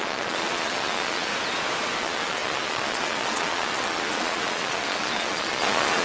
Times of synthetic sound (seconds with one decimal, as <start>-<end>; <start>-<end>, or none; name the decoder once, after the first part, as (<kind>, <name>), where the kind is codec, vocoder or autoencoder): 0.0-1.3 (vocoder, Vocos); 2.0-6.0